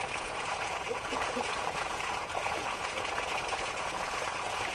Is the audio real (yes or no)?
no